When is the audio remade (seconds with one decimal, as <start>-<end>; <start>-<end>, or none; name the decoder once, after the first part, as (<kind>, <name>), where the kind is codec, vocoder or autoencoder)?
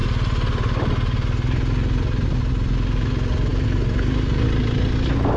none